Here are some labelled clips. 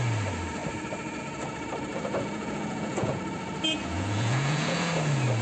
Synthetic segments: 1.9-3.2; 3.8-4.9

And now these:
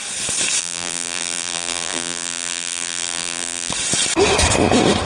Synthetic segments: 0.6-3.7

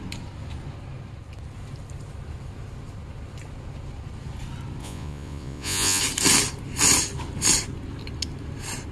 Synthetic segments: 4.8-6.0

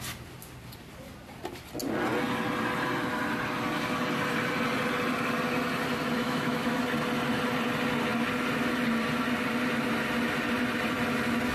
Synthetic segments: 6.2-6.8

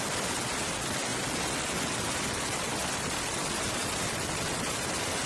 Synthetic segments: none

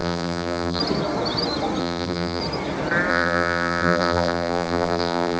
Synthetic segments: 0.0-0.8; 1.8-2.4; 3.1-5.4

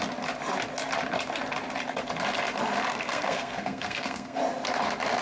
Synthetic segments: 2.9-4.4